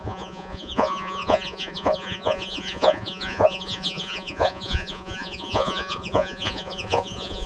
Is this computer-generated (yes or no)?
yes